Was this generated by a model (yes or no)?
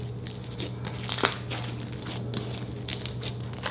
no